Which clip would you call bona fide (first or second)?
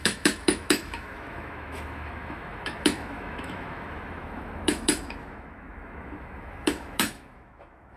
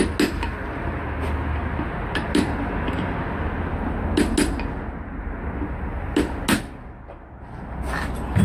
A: second